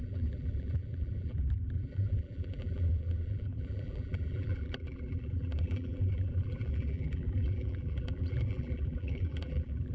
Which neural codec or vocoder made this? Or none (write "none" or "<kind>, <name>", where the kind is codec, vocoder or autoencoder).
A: vocoder, BigVGAN v2